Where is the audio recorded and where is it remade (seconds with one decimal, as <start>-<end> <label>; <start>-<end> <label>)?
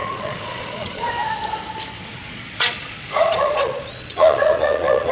0.0-1.1 remade; 1.1-2.0 recorded; 2.0-5.1 remade